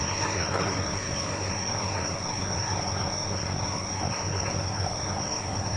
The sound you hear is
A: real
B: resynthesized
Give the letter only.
B